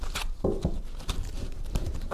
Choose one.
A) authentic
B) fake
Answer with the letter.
B